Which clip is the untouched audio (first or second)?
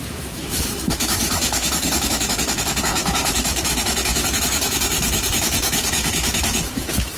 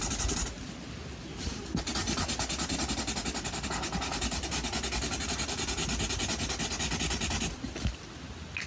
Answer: second